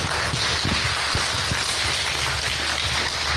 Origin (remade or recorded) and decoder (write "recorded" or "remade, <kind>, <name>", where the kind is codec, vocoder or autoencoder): recorded